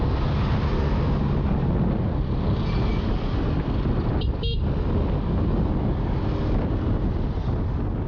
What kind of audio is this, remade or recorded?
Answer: recorded